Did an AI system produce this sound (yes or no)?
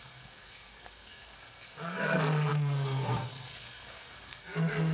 yes